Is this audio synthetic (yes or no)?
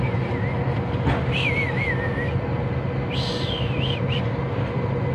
no